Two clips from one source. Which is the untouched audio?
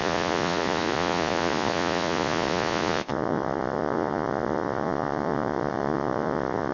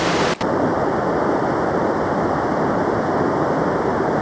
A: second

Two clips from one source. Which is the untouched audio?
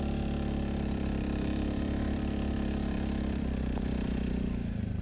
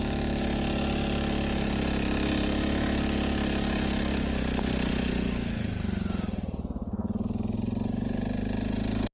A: second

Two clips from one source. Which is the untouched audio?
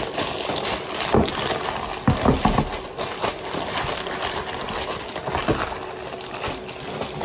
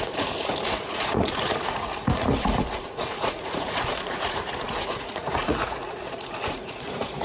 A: first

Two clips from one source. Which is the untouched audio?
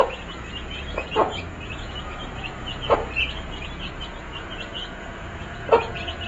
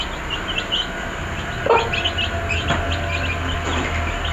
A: second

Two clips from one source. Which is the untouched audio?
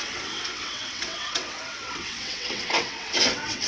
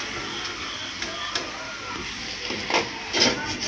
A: second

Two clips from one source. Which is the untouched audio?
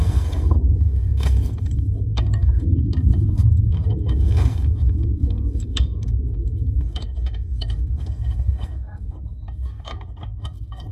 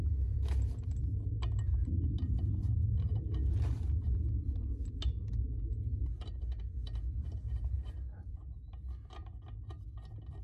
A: second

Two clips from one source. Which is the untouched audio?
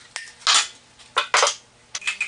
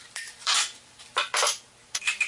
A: first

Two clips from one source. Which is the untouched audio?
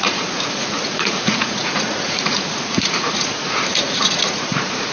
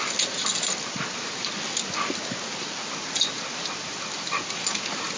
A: second